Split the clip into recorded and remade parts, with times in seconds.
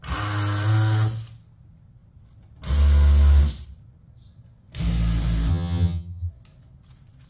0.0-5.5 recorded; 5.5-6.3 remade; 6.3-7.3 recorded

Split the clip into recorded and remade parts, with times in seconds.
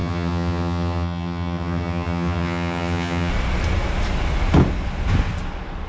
0.0-3.3 remade; 3.3-5.9 recorded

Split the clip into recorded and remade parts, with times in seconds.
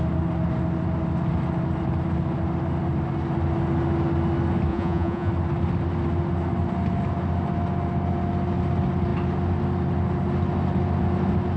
0.0-4.7 recorded; 4.7-5.3 remade; 5.3-11.6 recorded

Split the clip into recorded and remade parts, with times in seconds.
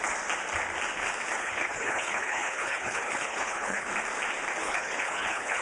0.0-1.4 recorded; 1.4-3.9 remade; 3.9-4.6 recorded; 4.6-5.6 remade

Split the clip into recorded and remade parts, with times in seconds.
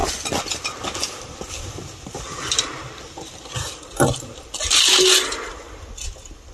0.0-6.5 recorded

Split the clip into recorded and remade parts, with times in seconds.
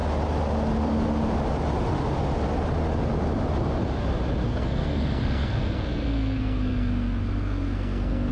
0.0-4.5 recorded; 4.5-8.3 remade